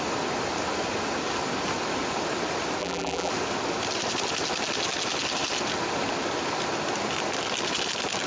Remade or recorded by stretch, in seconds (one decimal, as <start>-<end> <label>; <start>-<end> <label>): 0.0-2.8 recorded; 2.8-3.3 remade; 3.3-8.3 recorded